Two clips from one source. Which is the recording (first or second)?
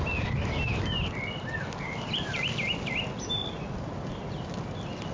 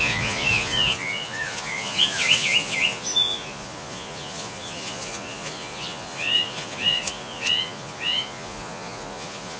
first